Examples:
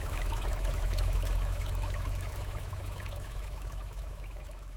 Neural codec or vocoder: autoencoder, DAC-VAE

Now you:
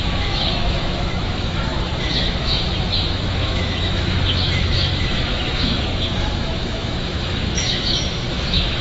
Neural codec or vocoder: autoencoder, DAC-VAE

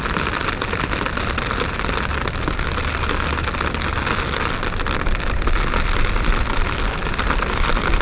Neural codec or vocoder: none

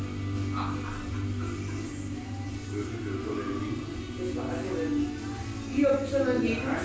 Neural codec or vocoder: none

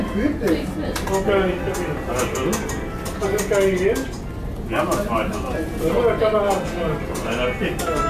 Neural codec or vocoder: none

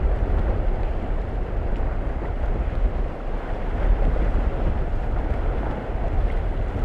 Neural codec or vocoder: none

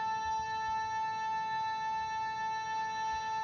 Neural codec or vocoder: none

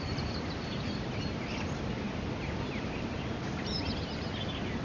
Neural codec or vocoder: vocoder, BigVGAN v2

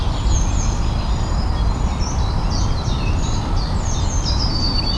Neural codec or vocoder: none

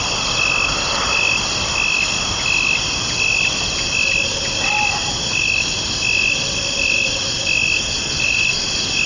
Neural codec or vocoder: none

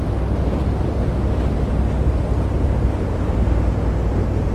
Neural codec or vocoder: none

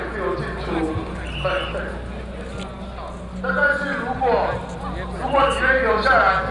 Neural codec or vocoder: none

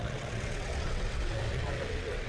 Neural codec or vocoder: vocoder, WaveNeXt